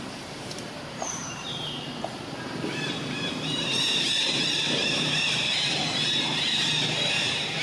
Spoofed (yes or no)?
yes